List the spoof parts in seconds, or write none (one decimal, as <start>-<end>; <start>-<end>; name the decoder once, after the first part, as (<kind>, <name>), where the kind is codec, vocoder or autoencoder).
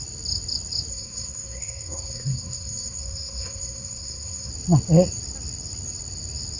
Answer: 0.9-4.5 (codec, SNAC)